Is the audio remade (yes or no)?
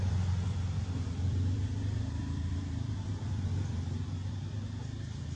yes